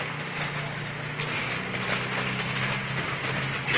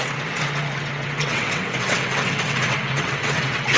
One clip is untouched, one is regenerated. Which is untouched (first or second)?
first